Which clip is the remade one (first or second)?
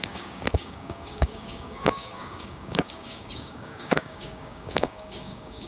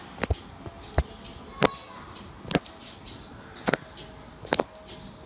first